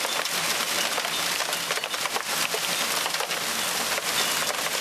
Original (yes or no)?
yes